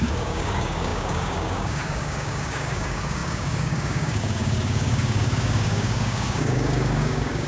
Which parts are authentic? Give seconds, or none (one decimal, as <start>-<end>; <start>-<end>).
none